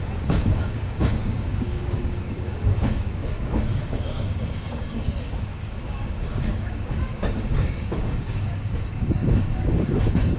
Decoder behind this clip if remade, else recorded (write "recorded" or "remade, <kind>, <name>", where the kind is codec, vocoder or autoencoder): remade, codec, DAC